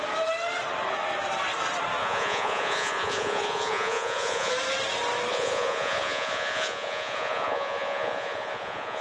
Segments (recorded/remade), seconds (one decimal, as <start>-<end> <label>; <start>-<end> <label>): 0.0-2.0 recorded; 2.0-4.5 remade; 4.5-5.3 recorded; 5.3-9.0 remade